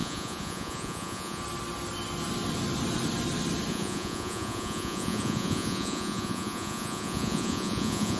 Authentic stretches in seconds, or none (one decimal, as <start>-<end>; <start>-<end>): 1.4-3.7